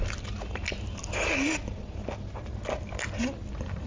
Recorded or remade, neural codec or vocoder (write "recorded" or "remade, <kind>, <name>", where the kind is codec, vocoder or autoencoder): recorded